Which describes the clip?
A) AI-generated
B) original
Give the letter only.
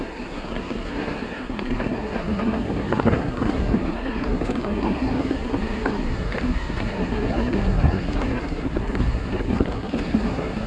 A